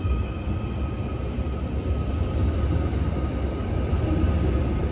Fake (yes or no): no